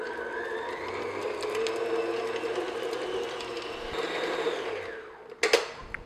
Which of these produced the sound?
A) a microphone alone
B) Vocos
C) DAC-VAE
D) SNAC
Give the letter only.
A